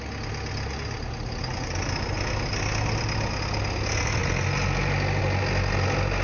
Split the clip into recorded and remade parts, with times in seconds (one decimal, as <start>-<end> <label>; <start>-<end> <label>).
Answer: 0.0-6.2 recorded